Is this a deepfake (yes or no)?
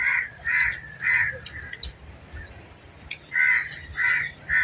no